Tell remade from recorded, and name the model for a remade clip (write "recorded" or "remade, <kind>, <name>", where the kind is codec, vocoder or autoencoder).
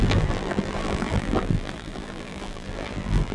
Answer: remade, vocoder, BigVGAN v2